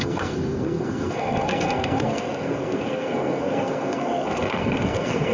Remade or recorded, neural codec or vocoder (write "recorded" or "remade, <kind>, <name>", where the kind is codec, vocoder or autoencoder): remade, codec, SNAC